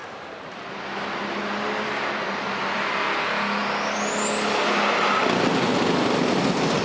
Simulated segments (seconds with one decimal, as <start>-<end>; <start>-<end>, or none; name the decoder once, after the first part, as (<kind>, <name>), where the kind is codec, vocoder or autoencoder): none